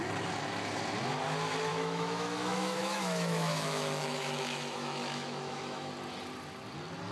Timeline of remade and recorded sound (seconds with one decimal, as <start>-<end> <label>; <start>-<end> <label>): 0.0-1.7 recorded; 1.7-5.9 remade; 5.9-7.1 recorded